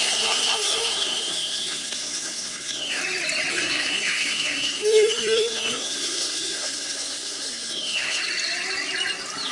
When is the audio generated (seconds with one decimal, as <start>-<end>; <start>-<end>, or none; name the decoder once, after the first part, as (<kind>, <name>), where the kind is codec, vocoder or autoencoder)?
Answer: 0.0-3.0 (codec, SNAC); 3.5-8.2